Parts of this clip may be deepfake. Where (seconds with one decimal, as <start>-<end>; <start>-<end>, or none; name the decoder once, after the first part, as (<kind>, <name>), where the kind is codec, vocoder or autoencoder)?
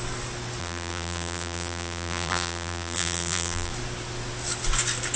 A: 0.6-3.7 (vocoder, BigVGAN v2)